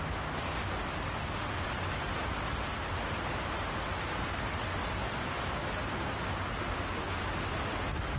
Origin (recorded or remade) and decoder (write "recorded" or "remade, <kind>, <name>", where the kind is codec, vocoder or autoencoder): recorded